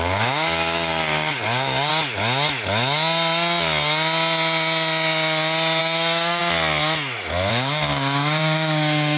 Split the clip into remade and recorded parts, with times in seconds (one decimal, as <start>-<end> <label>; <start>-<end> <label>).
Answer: 0.0-1.9 remade; 1.9-5.8 recorded; 5.8-6.4 remade; 6.4-7.5 recorded; 7.5-9.2 remade